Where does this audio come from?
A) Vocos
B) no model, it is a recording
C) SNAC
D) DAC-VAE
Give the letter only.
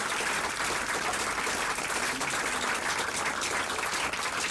B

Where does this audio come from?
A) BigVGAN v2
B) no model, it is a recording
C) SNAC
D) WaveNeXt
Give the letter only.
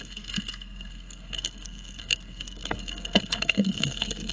C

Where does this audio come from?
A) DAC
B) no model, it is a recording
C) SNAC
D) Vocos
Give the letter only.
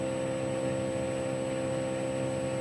B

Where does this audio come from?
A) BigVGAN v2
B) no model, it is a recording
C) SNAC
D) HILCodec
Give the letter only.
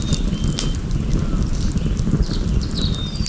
B